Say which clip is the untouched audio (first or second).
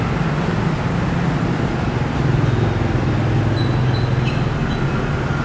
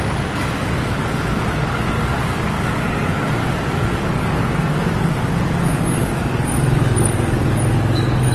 first